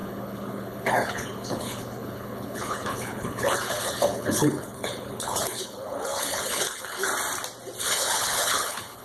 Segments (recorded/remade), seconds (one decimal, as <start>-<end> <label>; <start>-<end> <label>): 0.0-7.1 remade; 7.1-7.8 recorded; 7.8-9.0 remade